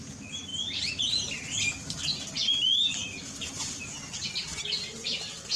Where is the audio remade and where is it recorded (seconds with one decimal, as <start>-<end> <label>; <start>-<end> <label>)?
0.0-2.7 recorded; 2.7-4.0 remade; 4.0-5.6 recorded